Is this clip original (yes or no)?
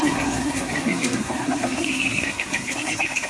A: no